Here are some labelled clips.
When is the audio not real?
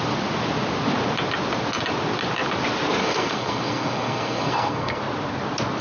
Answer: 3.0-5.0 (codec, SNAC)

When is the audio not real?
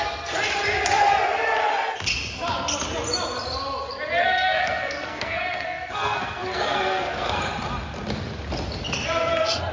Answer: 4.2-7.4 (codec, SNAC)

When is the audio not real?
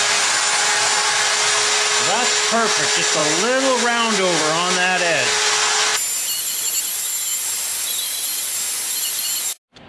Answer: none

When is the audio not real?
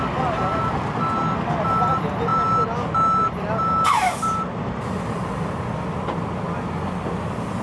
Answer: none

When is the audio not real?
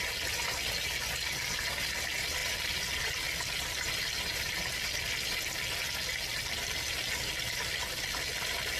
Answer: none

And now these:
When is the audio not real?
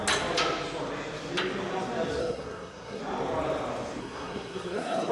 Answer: 2.2-3.0 (codec, SNAC); 4.0-5.1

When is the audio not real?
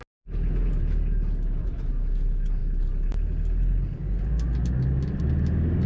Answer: none